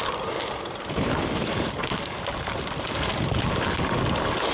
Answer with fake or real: real